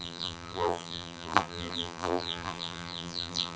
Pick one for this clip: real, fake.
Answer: fake